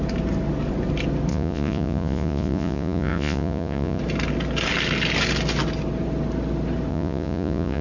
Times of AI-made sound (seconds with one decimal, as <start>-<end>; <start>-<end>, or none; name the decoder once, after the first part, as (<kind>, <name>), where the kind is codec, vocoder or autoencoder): 1.3-4.0 (vocoder, Vocos); 6.9-7.8